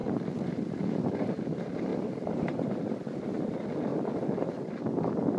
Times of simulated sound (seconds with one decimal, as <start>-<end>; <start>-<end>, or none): 0.0-1.3; 1.9-2.7